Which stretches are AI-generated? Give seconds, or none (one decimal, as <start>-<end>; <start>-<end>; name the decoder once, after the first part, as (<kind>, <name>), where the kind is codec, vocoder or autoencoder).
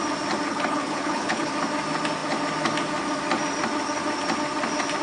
0.5-1.5 (codec, HILCodec)